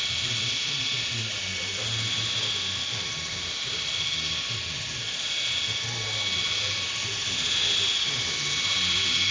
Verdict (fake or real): real